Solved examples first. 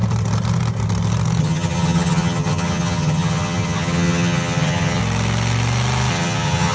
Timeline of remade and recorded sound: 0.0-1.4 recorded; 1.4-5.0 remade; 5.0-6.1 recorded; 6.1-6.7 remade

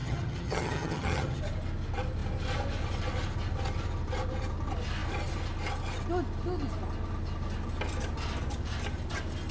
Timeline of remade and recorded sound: 0.0-1.4 remade; 1.4-9.5 recorded

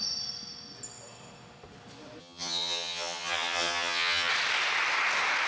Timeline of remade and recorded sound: 0.0-2.2 recorded; 2.2-4.3 remade; 4.3-5.5 recorded

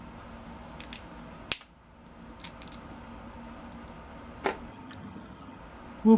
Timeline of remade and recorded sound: 0.0-4.7 recorded; 4.7-5.6 remade; 5.6-6.2 recorded